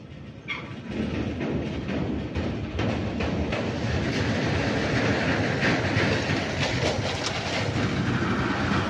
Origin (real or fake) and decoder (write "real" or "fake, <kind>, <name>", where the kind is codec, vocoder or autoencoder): real